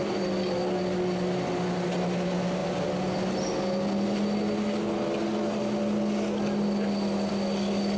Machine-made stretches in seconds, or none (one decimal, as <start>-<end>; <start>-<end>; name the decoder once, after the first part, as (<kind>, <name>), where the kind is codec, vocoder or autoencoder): none